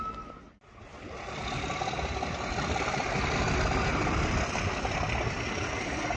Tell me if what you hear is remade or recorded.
recorded